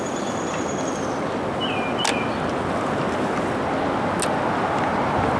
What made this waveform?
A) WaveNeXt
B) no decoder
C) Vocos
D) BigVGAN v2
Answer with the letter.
B